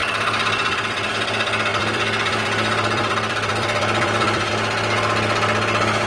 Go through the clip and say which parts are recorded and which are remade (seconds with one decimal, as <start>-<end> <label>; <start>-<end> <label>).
0.0-1.1 remade; 1.1-1.7 recorded; 1.7-4.5 remade; 4.5-6.1 recorded